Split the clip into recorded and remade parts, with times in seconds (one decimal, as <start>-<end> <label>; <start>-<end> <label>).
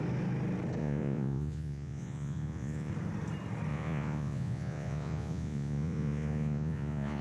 0.0-0.8 recorded; 0.8-2.9 remade; 2.9-3.7 recorded; 3.7-7.2 remade